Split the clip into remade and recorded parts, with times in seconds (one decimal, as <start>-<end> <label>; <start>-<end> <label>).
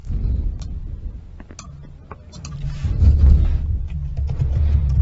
0.0-4.1 recorded; 4.1-5.0 remade